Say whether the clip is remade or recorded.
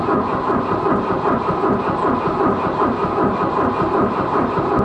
recorded